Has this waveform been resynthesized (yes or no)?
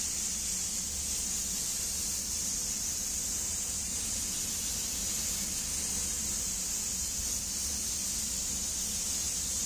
no